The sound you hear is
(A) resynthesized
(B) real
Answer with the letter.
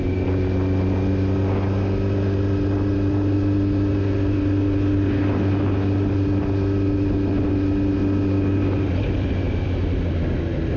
B